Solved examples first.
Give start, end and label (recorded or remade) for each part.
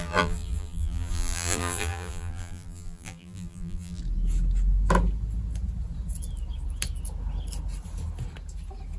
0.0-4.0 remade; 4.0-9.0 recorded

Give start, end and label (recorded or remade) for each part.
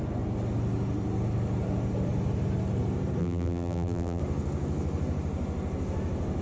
0.0-3.2 recorded; 3.2-4.2 remade; 4.2-6.4 recorded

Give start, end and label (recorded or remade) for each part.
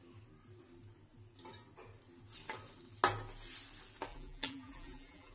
0.0-4.1 recorded; 4.1-5.3 remade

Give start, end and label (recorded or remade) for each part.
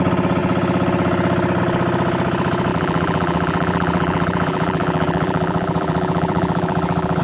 0.0-2.7 recorded; 2.7-7.2 remade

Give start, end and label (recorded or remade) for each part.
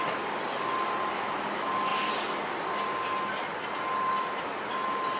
0.0-5.2 recorded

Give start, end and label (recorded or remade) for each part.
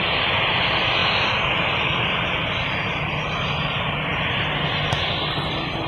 0.0-5.9 recorded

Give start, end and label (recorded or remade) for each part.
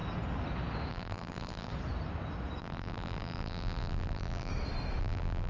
0.0-0.9 recorded; 0.9-1.7 remade; 1.7-2.6 recorded; 2.6-4.5 remade; 4.5-5.0 recorded; 5.0-5.5 remade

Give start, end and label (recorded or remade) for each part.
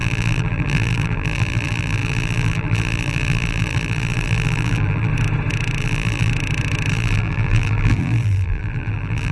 0.0-5.1 remade; 5.1-5.8 recorded; 5.8-6.3 remade; 6.3-6.9 recorded; 6.9-9.3 remade